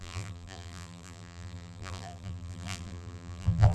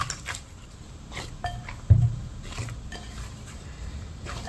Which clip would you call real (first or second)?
second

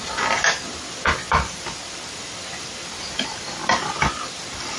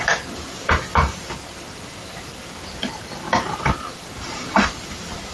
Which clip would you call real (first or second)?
first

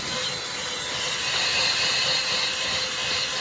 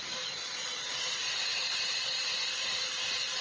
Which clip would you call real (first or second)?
first